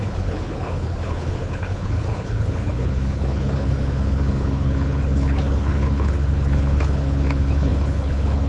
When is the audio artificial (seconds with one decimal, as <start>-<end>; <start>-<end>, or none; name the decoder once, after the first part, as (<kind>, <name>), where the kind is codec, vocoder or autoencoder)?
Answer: 0.0-8.5 (codec, HILCodec)